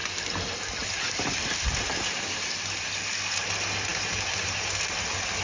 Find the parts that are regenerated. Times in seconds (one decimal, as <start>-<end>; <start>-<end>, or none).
3.9-4.7